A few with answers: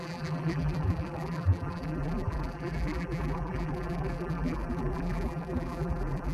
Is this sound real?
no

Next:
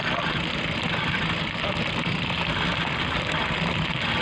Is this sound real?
yes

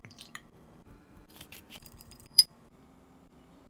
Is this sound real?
no